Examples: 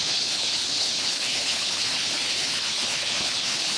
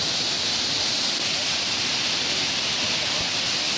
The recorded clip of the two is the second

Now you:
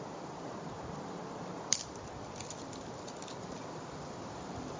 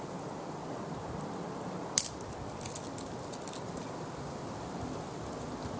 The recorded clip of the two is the second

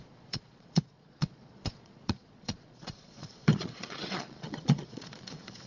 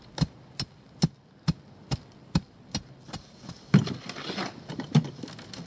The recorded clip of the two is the second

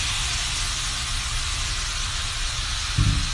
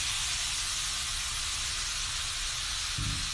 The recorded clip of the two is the first